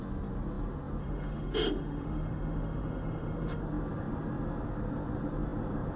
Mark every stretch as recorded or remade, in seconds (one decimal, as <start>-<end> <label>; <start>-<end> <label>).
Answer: 0.0-1.0 recorded; 1.0-3.6 remade; 3.6-6.0 recorded